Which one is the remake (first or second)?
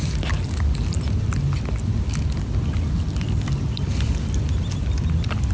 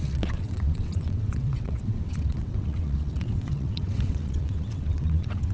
second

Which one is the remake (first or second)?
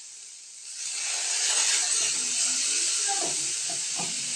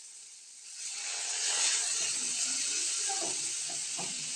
second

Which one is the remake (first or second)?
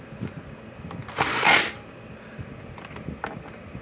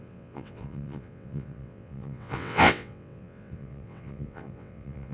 second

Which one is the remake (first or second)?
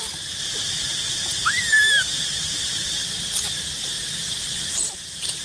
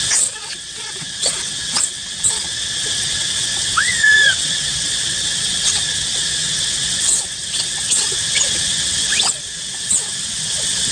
second